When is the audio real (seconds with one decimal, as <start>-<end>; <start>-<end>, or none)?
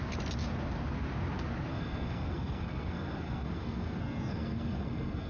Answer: 0.0-1.7